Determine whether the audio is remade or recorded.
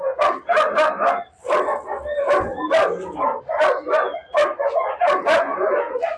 recorded